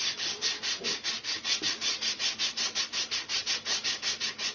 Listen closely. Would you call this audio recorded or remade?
recorded